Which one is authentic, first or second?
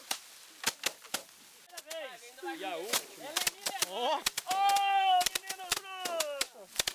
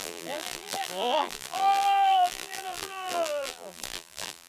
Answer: first